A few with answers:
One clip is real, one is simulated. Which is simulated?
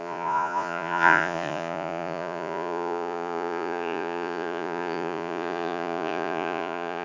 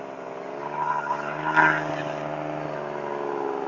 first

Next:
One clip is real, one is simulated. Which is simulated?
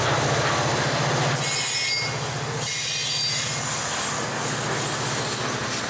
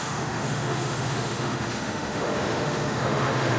second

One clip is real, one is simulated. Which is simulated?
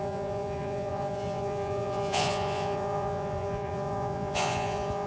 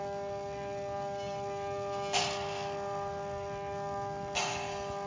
first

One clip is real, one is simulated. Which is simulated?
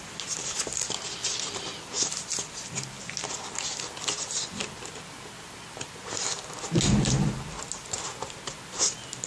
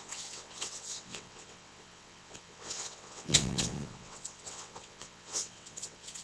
second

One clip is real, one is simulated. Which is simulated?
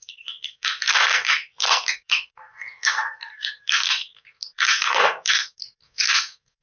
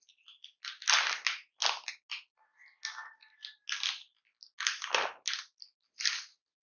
first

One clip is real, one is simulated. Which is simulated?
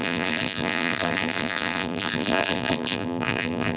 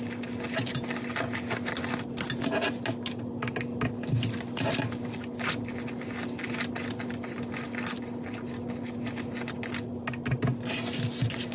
first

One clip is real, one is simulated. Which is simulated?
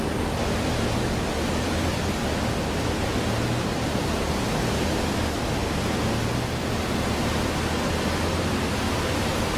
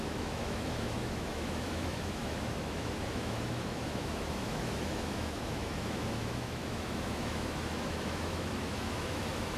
second